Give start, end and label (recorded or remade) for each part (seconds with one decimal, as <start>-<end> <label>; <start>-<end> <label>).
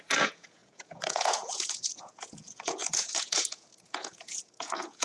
0.0-5.0 remade